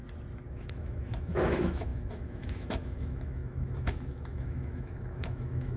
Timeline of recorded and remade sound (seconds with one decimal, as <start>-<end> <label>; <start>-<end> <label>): 0.0-0.5 recorded; 0.5-5.8 remade